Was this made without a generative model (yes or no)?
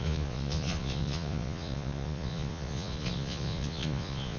no